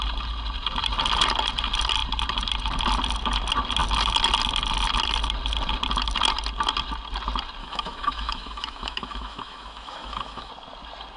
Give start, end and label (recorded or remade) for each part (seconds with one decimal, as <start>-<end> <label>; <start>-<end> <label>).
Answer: 0.0-7.6 recorded; 7.6-10.5 remade; 10.5-11.2 recorded